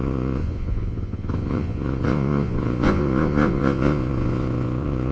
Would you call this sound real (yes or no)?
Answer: no